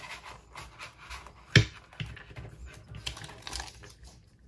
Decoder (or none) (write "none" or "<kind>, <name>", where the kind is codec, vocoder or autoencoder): none